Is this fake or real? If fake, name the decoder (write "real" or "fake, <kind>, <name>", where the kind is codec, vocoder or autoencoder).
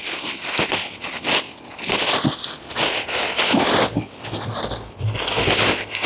real